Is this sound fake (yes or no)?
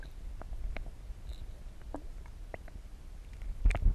no